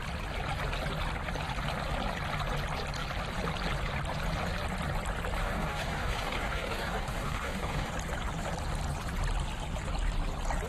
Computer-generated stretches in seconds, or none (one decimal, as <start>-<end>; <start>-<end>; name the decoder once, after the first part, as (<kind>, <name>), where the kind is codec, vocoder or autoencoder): 5.4-7.9 (codec, DAC)